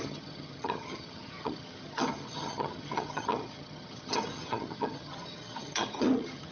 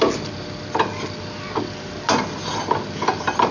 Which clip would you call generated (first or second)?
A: first